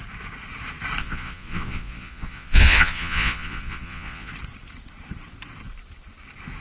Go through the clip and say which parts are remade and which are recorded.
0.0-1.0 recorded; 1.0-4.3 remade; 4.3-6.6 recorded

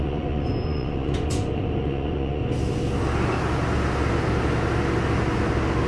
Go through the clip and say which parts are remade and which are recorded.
0.0-2.4 remade; 2.4-5.9 recorded

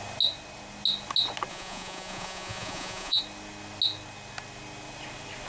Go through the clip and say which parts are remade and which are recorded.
0.0-1.5 recorded; 1.5-3.2 remade; 3.2-5.5 recorded